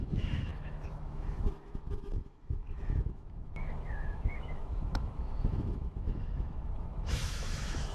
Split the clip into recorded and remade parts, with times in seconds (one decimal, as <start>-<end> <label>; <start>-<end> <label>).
0.0-7.9 remade